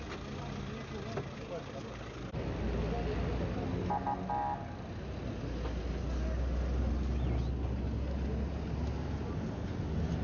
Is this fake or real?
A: real